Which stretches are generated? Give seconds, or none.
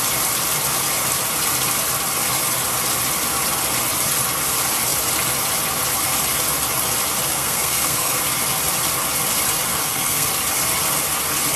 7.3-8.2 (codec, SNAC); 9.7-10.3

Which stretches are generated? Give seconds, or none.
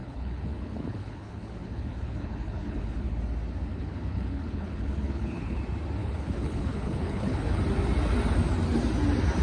0.0-3.2 (codec, HILCodec); 3.7-5.6; 6.0-7.6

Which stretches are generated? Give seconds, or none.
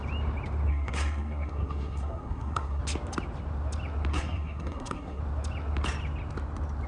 0.7-2.8 (codec, SNAC); 4.1-5.2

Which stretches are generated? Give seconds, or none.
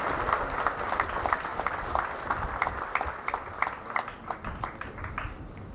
none